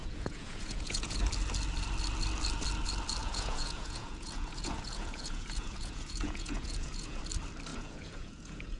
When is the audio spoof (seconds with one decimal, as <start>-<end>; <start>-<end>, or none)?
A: 0.0-1.2; 3.2-7.2; 7.7-8.8

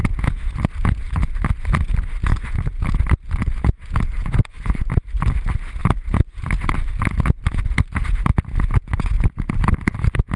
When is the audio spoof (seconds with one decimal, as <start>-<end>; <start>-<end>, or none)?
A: 2.3-2.8; 4.2-4.8

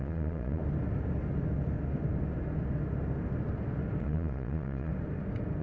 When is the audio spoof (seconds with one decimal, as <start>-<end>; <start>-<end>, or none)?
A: 0.0-0.6; 4.0-4.9

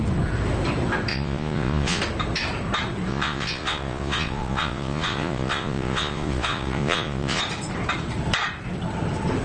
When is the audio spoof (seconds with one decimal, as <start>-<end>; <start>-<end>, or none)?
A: 1.1-2.0; 3.1-7.4

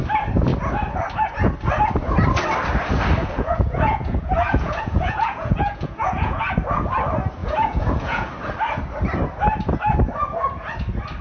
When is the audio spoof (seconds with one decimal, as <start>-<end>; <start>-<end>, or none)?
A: 3.2-6.4; 7.4-8.3